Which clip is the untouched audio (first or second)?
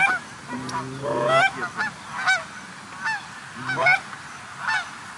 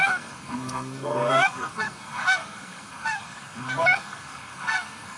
first